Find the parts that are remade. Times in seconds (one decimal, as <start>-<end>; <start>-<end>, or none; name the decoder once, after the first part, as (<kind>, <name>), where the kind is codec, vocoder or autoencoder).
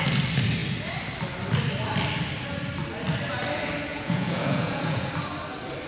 3.9-5.1 (vocoder, Vocos)